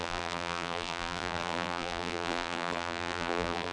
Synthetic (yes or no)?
yes